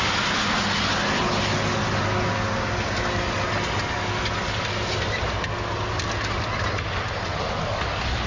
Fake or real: real